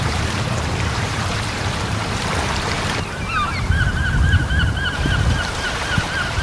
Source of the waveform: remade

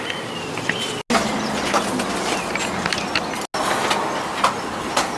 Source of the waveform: recorded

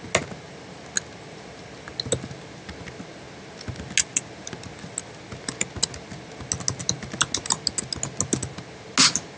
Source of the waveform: recorded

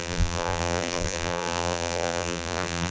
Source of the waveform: remade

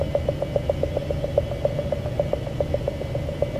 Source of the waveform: recorded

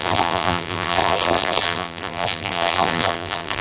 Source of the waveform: remade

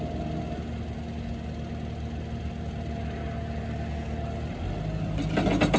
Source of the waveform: recorded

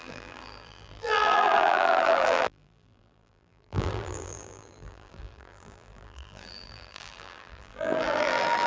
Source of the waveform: remade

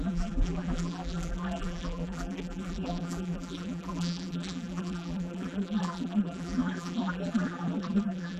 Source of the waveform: remade